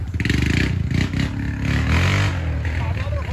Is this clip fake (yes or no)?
no